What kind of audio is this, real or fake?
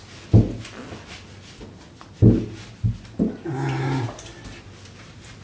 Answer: real